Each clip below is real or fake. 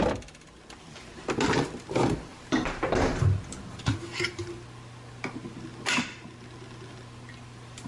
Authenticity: real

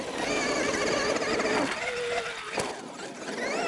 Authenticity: real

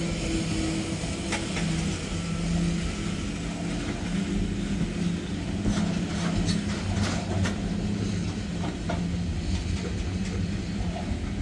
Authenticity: real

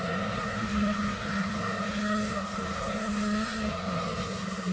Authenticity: fake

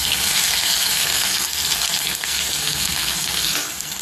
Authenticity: fake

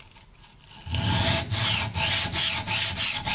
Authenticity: real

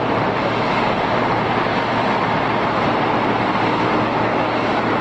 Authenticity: real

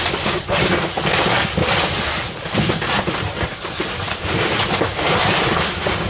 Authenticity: real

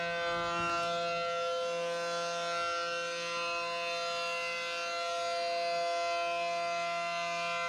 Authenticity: real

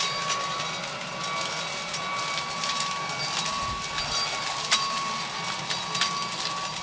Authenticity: real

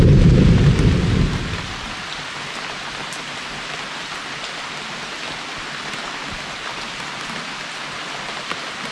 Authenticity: real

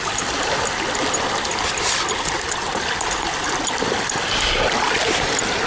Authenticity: real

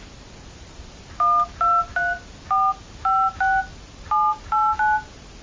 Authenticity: real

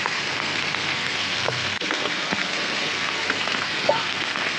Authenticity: fake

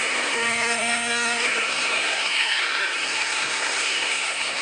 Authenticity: fake